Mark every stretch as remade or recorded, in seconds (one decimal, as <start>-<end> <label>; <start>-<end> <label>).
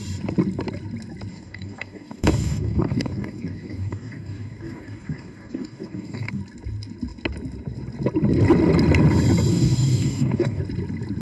0.0-1.3 recorded; 1.3-6.4 remade; 6.4-9.5 recorded; 9.5-10.6 remade; 10.6-11.2 recorded